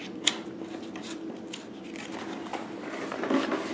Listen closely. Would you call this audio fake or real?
real